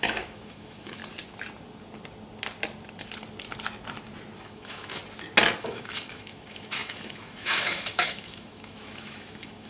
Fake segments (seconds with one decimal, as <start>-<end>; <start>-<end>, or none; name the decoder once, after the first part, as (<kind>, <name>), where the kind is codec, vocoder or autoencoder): 0.0-1.0 (autoencoder, DAC-VAE); 4.5-5.0; 5.6-9.7